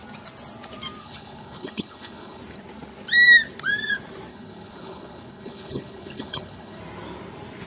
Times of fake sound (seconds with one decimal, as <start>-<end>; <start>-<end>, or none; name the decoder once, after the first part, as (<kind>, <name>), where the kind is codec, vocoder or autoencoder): 1.0-2.4 (codec, HILCodec); 4.3-6.8